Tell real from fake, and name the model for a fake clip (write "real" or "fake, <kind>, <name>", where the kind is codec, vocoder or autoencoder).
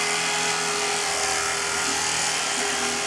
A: real